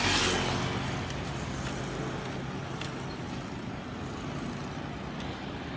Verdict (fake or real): real